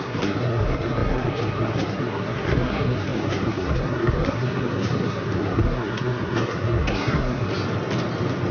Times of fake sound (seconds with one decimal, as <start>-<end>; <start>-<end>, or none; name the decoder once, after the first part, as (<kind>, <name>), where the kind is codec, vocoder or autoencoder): 0.0-7.5 (codec, SNAC)